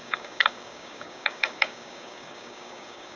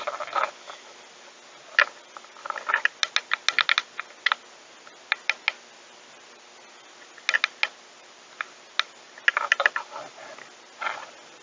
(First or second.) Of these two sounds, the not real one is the first